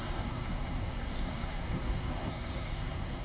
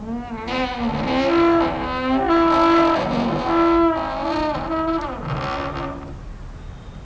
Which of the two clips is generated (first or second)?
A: first